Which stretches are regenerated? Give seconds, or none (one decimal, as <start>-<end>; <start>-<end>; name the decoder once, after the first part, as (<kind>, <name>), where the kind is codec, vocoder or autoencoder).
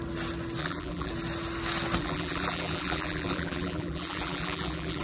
0.6-1.1 (vocoder, BigVGAN v2); 2.0-5.0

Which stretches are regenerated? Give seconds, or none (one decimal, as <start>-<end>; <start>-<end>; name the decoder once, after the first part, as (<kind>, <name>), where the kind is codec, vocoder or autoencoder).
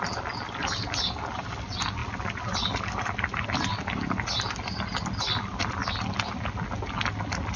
none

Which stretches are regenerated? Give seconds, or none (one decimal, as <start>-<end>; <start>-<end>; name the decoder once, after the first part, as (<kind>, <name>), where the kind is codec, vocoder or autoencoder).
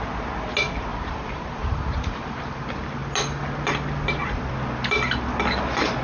0.9-2.6 (vocoder, BigVGAN v2)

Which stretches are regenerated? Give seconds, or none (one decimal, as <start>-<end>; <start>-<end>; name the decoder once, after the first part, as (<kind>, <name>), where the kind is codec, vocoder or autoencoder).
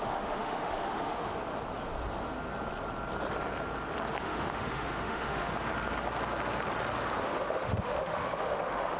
0.0-1.3 (autoencoder, DAC-VAE); 4.2-5.5; 7.2-9.0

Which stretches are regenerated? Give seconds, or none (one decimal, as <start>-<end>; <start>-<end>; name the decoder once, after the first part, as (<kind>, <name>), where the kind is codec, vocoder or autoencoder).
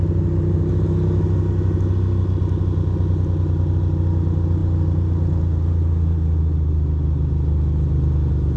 none